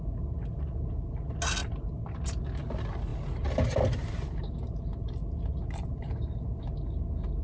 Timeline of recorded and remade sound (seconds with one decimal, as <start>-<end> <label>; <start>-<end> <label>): 0.0-7.4 recorded